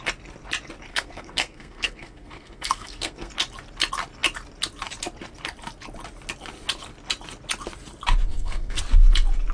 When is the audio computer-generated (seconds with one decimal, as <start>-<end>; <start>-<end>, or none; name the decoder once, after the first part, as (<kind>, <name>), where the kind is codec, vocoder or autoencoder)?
0.9-3.3 (codec, SNAC); 8.3-8.8